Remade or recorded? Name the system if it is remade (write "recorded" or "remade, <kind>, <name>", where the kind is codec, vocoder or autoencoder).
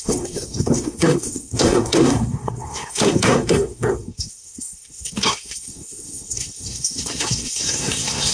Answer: remade, codec, SNAC